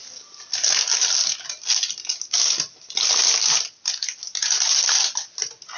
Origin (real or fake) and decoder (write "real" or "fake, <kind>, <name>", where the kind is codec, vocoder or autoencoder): real